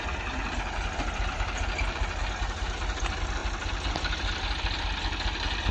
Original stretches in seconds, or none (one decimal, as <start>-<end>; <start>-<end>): 0.0-5.7